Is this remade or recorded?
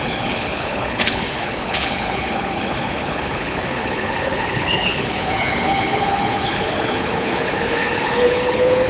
remade